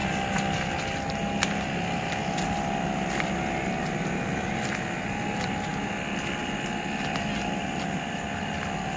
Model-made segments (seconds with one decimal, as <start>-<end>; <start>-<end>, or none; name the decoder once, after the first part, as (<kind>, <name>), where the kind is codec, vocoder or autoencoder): none